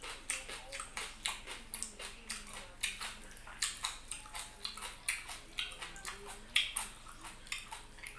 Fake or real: real